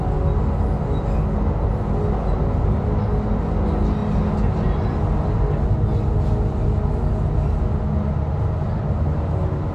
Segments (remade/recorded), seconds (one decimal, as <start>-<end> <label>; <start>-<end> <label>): 0.0-9.7 recorded